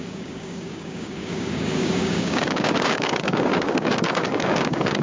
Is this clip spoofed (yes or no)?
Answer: yes